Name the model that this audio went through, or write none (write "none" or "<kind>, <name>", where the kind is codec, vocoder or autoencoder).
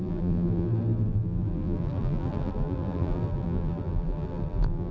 vocoder, BigVGAN v2